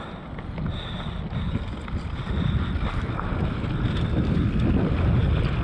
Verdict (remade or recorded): recorded